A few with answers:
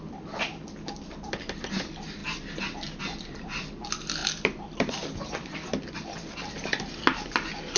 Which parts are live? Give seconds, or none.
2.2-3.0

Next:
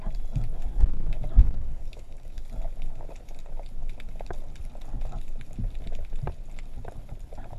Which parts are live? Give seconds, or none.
0.0-1.4; 2.5-7.6

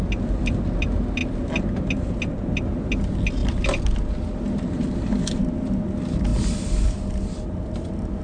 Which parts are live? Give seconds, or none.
0.0-6.3; 7.7-8.2

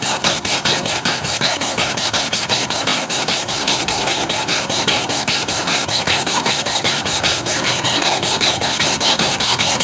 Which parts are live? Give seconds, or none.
none

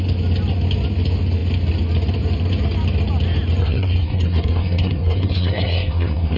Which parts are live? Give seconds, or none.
0.0-3.6